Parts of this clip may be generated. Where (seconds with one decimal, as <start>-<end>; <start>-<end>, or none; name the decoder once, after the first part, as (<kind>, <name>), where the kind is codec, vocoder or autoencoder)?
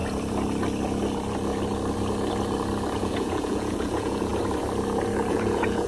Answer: 3.0-4.3 (vocoder, Vocos); 5.3-5.9